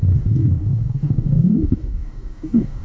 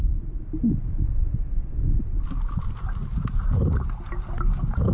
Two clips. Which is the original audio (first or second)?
second